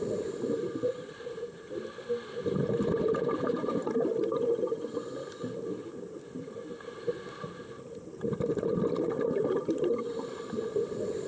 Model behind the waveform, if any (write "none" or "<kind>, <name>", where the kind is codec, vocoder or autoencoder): vocoder, BigVGAN v2